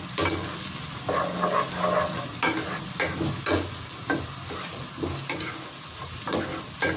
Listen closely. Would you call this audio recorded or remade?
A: recorded